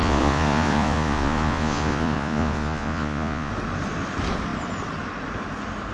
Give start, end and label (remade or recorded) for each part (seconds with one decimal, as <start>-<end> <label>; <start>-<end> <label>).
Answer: 0.0-3.5 remade; 3.5-5.9 recorded